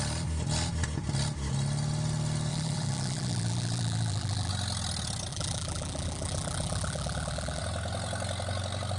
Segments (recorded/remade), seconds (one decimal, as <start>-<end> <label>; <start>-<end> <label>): 0.0-2.5 recorded; 2.5-4.5 remade; 4.5-5.3 recorded; 5.3-7.6 remade; 7.6-9.0 recorded